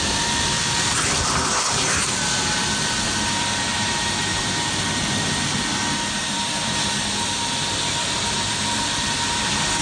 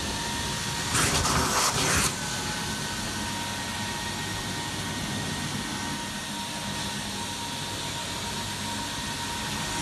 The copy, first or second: first